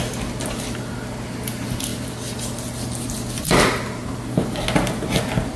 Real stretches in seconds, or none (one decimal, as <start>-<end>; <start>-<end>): 0.0-5.6